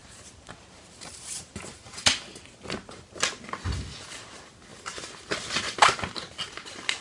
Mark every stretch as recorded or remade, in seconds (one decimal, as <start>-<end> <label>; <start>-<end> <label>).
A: 0.0-2.9 remade; 2.9-4.7 recorded; 4.7-5.3 remade; 5.3-7.0 recorded